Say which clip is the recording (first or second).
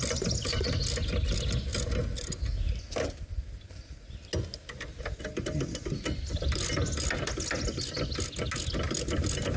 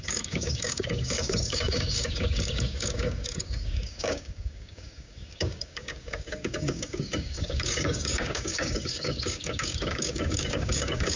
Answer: first